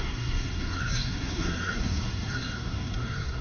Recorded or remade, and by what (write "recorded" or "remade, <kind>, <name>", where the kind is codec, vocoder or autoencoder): remade, codec, SNAC